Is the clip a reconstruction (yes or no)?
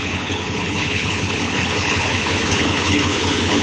yes